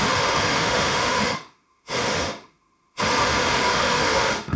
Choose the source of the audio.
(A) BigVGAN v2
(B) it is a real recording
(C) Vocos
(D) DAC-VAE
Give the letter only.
D